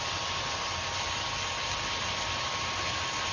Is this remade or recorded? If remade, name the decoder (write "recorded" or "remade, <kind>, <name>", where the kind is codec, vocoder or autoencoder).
remade, vocoder, BigVGAN v2